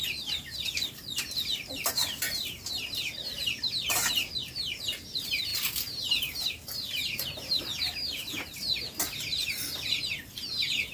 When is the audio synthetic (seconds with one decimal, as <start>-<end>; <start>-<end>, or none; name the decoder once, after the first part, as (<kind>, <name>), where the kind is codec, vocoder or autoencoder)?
none

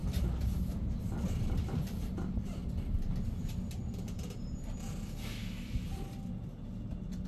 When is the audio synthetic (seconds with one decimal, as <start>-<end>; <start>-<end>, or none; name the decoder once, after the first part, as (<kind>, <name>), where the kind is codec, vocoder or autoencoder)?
0.0-2.2 (vocoder, BigVGAN v2); 2.6-3.4

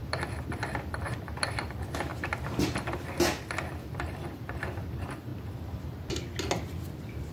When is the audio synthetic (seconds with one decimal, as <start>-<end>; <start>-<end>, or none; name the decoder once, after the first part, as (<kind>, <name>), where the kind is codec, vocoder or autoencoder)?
0.0-5.3 (vocoder, BigVGAN v2)

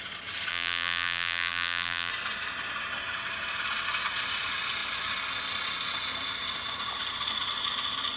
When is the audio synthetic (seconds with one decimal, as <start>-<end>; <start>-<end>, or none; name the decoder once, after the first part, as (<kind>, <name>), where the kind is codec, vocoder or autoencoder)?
0.5-2.1 (vocoder, BigVGAN v2)

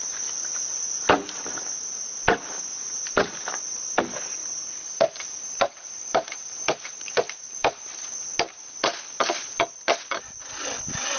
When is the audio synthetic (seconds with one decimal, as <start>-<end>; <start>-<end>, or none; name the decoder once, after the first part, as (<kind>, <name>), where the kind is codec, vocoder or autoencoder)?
2.7-4.0 (vocoder, BigVGAN v2); 4.4-7.8

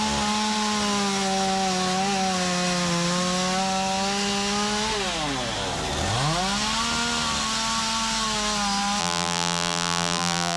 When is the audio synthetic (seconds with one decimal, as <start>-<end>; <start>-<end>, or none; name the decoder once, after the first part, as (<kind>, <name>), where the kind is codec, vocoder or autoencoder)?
9.0-10.6 (vocoder, BigVGAN v2)

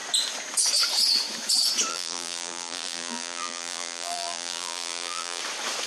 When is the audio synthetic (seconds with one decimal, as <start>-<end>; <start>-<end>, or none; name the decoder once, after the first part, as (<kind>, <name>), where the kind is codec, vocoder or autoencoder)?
1.9-5.4 (vocoder, BigVGAN v2)